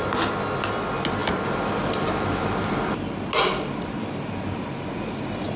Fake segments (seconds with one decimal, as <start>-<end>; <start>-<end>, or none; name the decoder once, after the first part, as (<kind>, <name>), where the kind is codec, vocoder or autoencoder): 1.2-3.3 (vocoder, BigVGAN v2)